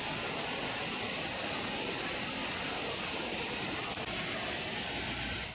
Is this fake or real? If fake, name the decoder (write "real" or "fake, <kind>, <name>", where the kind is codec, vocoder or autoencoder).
fake, vocoder, BigVGAN v2